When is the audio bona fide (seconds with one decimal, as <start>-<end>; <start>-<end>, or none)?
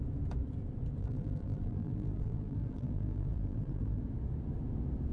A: 0.0-1.0; 4.0-5.1